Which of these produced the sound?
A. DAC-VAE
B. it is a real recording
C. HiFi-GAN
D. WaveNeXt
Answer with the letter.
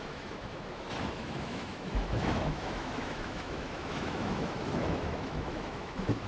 A